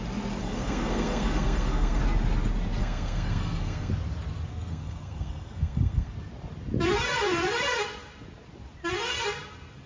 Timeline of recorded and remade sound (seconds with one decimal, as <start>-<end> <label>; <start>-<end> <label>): 0.0-0.4 recorded; 0.4-2.0 remade; 2.0-2.8 recorded; 2.8-3.9 remade; 3.9-4.5 recorded; 4.5-6.1 remade; 6.1-9.9 recorded